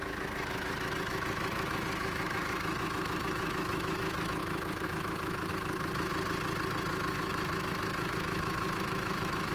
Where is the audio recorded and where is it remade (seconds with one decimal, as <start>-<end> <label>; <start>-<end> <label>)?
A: 0.0-6.1 remade; 6.1-6.9 recorded; 6.9-9.5 remade